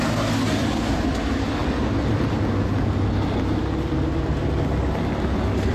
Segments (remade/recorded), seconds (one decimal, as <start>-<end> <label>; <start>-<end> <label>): 0.0-5.7 recorded